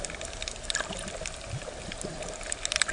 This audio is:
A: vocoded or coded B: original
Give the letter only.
B